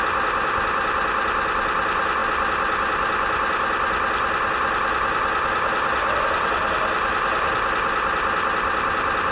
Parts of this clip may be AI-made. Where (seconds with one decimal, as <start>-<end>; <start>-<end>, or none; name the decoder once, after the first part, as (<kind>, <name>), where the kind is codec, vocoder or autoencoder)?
none